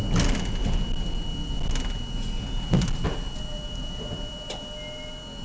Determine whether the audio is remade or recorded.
recorded